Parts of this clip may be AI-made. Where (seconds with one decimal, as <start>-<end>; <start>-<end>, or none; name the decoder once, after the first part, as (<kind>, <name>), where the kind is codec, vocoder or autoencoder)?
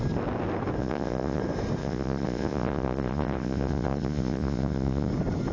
0.8-1.4 (vocoder, Vocos); 1.8-5.1